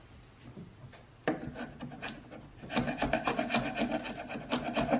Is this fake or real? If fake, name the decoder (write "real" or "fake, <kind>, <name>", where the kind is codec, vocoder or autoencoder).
real